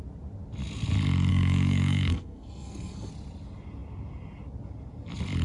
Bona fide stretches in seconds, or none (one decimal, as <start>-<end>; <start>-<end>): 0.0-1.3; 3.1-5.4